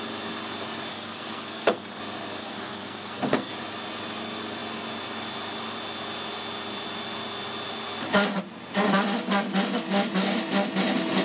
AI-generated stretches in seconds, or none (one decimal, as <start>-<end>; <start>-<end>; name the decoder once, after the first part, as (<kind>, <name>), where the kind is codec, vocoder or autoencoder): 0.9-2.0 (codec, SNAC); 2.4-3.5